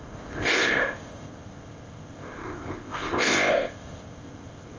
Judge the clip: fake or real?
fake